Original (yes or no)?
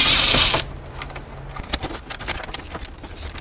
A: yes